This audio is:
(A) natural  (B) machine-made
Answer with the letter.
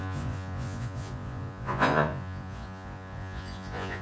B